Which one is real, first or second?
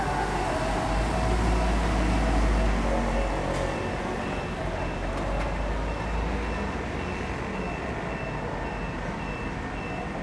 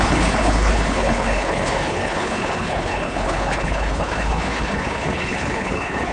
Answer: first